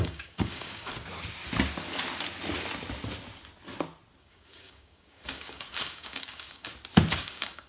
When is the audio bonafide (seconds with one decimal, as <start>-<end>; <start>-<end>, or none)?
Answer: 0.9-4.2; 6.7-7.2